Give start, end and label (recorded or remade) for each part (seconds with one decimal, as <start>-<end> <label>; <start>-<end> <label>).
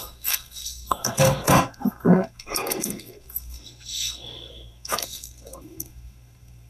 0.0-6.7 remade